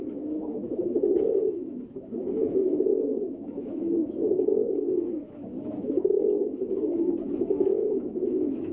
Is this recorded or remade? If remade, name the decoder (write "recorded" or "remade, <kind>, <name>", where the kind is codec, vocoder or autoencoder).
remade, autoencoder, DAC-VAE